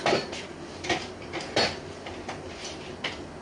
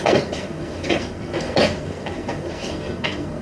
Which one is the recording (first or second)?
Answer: first